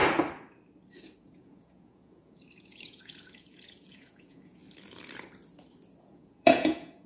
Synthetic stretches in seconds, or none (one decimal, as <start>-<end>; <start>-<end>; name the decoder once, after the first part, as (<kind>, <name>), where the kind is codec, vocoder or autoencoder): 1.2-4.6 (vocoder, Vocos); 6.0-7.1